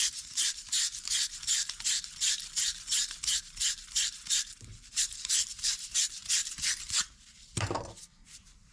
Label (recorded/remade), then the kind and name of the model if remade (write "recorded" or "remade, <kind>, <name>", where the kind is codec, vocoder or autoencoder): remade, vocoder, BigVGAN v2